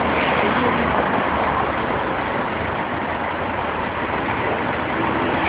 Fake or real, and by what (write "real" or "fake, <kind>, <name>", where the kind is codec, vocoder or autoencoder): real